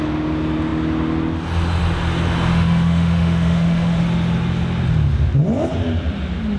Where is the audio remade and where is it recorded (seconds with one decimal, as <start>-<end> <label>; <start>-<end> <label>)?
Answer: 0.0-2.5 recorded; 2.5-4.0 remade; 4.0-6.6 recorded